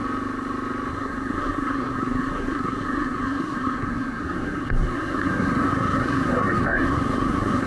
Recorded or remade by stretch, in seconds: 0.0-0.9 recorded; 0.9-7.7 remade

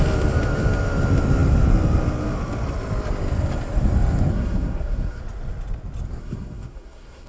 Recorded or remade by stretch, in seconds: 0.0-4.3 recorded; 4.3-5.2 remade; 5.2-6.2 recorded; 6.2-7.3 remade

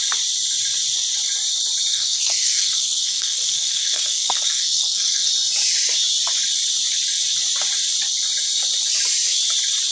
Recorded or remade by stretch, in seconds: 0.0-1.9 recorded; 1.9-5.3 remade; 5.3-9.9 recorded

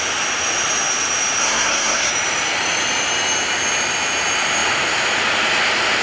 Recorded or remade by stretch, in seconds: 0.0-1.4 recorded; 1.4-2.1 remade; 2.1-6.0 recorded

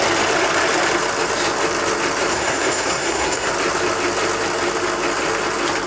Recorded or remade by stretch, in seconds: 0.0-2.3 recorded; 2.3-3.5 remade; 3.5-5.9 recorded